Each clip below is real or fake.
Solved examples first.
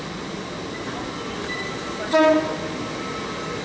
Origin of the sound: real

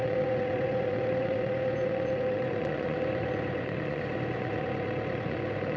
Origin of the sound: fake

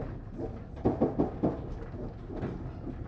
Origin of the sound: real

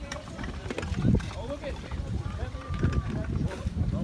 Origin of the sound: fake